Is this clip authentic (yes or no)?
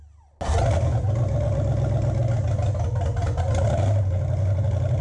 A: yes